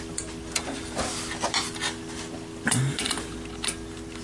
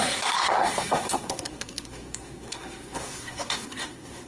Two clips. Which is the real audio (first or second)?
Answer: first